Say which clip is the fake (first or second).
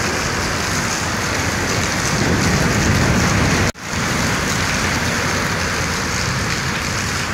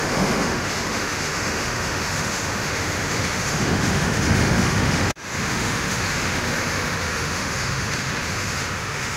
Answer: second